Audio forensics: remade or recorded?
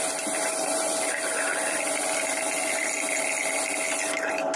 recorded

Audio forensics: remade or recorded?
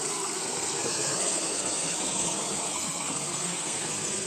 remade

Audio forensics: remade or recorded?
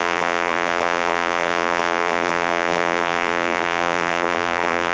remade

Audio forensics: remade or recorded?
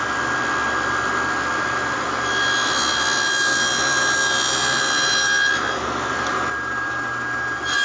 recorded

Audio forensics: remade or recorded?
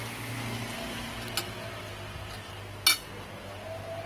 recorded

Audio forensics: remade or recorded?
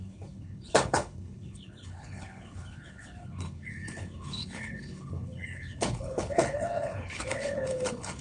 remade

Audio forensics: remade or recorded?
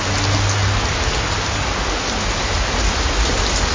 recorded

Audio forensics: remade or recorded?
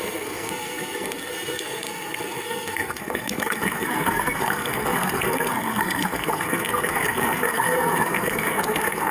remade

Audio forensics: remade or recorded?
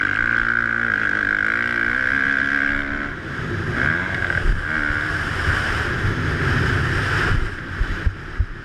recorded